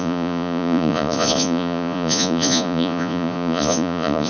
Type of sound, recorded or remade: remade